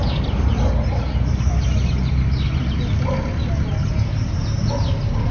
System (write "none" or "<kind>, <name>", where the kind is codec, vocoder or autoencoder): none